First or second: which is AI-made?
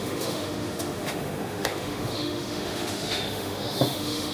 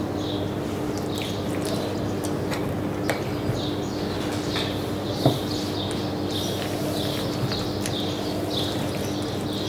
first